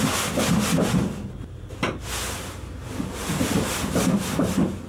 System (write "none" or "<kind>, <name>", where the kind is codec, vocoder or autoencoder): none